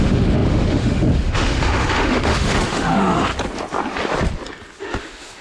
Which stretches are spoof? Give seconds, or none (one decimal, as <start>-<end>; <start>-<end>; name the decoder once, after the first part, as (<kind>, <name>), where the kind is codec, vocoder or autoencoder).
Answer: 0.0-3.3 (autoencoder, DAC-VAE); 4.8-5.4